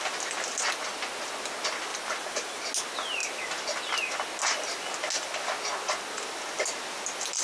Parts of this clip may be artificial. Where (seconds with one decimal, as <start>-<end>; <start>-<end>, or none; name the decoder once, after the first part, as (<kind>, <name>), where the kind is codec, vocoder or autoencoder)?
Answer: 1.9-2.6 (vocoder, BigVGAN v2)